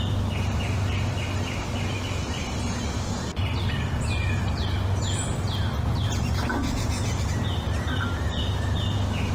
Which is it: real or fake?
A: real